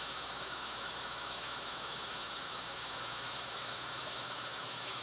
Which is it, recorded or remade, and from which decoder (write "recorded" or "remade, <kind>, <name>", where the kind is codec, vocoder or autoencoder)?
remade, autoencoder, DAC-VAE